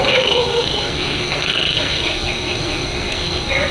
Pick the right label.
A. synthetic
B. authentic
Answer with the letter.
A